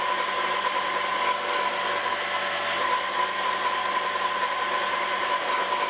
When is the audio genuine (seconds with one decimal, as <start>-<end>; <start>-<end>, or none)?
0.0-2.1; 3.2-5.9